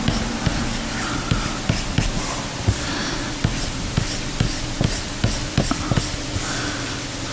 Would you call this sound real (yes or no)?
yes